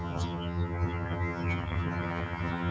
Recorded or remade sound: remade